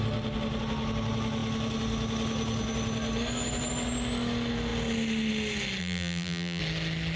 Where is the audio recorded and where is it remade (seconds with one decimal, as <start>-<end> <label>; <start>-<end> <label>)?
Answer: 0.0-5.8 recorded; 5.8-6.6 remade; 6.6-7.2 recorded